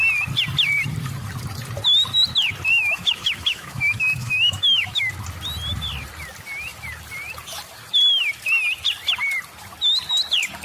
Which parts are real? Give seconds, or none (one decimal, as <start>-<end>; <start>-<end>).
0.0-2.7; 5.1-10.6